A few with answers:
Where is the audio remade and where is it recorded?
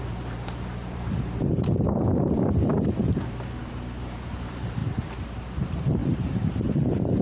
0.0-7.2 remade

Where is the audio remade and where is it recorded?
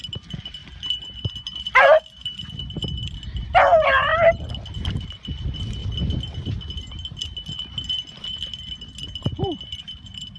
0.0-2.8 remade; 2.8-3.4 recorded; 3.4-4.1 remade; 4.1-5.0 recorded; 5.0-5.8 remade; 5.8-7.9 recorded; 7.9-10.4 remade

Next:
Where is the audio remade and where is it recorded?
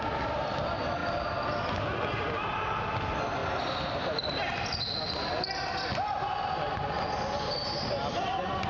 0.0-8.7 recorded